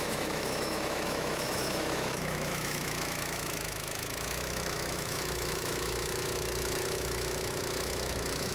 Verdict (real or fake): fake